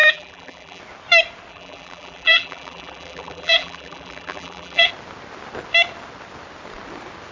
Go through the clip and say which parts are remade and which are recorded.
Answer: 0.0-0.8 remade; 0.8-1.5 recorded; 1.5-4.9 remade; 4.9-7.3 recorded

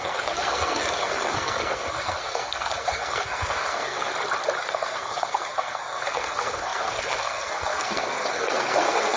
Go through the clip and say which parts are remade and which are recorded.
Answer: 0.0-4.1 remade; 4.1-4.6 recorded; 4.6-9.2 remade

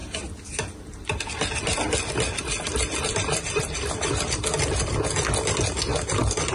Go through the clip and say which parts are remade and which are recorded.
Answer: 0.0-6.5 recorded

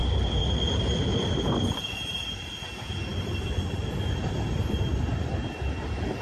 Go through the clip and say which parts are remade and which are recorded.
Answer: 0.0-2.5 remade; 2.5-3.1 recorded; 3.1-5.5 remade; 5.5-6.2 recorded